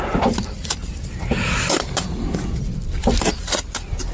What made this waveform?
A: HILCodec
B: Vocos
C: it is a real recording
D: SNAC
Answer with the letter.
C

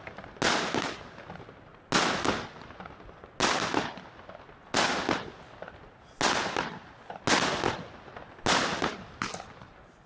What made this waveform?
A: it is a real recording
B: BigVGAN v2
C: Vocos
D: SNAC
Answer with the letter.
A